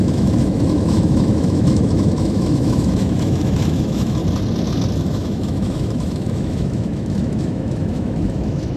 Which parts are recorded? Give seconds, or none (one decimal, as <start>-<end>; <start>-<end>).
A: 4.2-5.0

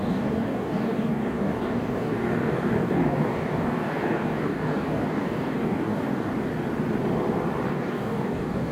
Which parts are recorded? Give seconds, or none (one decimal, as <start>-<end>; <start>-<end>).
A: 6.3-7.7

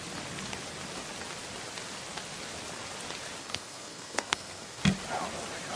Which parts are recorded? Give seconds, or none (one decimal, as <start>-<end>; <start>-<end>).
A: 0.0-3.4; 4.8-5.8

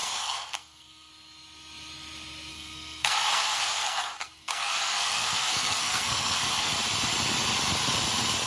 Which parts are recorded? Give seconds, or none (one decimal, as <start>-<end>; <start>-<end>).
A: 1.1-2.5; 6.7-8.5

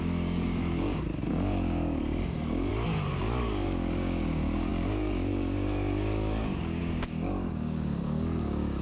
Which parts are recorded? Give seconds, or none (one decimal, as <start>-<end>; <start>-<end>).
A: 2.7-3.4

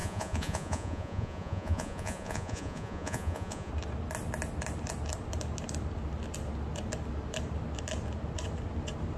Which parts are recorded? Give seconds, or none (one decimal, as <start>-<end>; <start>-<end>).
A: 3.7-9.2